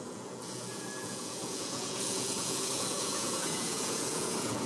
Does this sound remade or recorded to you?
remade